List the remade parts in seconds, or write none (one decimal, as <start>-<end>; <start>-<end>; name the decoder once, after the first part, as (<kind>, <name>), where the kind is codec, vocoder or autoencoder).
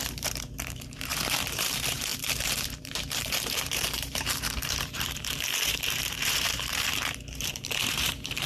0.0-8.5 (vocoder, BigVGAN v2)